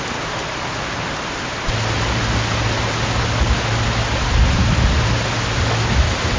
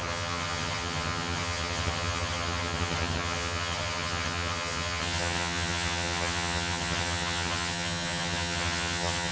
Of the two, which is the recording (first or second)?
first